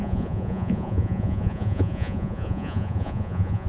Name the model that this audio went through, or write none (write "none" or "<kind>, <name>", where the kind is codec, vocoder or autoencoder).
vocoder, Vocos